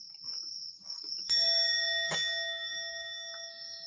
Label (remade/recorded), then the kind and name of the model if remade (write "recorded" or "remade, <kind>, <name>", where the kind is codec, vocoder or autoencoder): remade, codec, DAC